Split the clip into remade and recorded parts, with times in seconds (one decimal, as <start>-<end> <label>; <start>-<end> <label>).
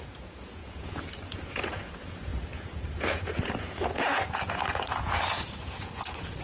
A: 0.0-6.4 remade